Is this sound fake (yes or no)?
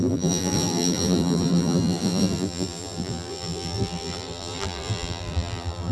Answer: yes